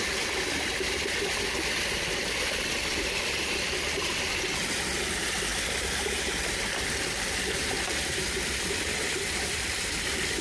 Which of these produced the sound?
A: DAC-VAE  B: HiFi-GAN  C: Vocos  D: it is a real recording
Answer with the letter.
D